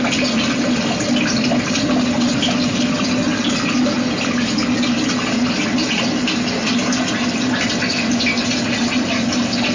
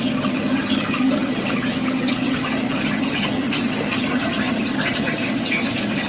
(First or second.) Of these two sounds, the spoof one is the second